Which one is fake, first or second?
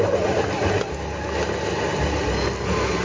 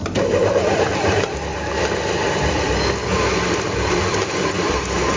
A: second